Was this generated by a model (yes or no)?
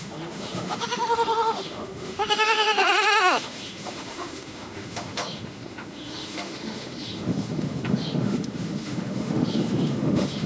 yes